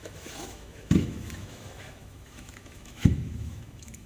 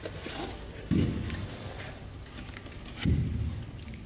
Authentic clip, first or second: second